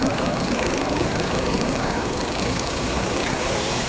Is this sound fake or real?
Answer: fake